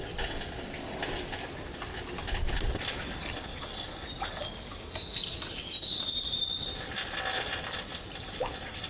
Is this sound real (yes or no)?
yes